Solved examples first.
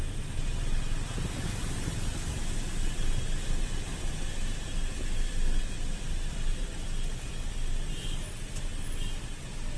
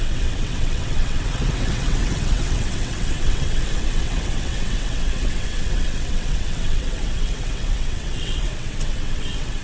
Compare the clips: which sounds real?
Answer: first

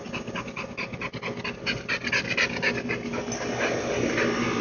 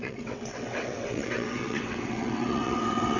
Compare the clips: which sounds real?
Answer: first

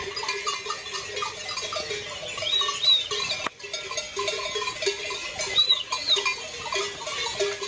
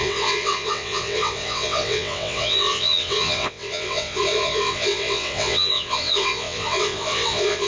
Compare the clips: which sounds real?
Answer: first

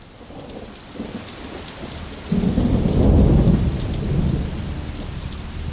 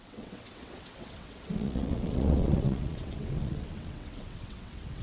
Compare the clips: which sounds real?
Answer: first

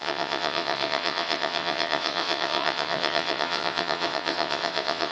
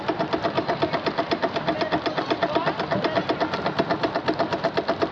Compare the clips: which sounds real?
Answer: second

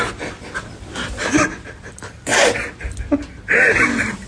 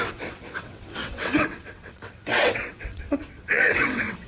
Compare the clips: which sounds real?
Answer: first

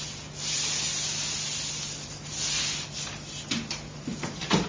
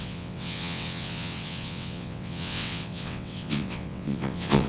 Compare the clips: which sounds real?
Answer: first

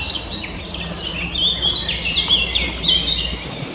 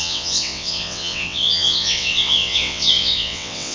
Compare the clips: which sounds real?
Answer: first